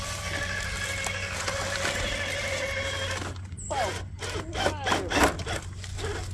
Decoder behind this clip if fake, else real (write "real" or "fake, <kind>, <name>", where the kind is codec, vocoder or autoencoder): real